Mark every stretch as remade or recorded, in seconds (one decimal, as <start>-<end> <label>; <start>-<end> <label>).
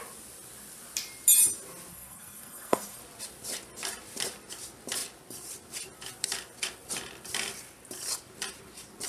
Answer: 0.0-1.9 recorded; 1.9-3.0 remade; 3.0-9.1 recorded